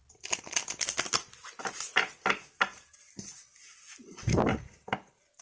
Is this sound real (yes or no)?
yes